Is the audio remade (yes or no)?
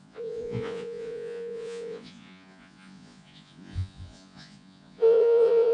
yes